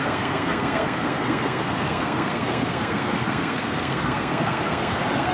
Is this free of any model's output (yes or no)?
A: no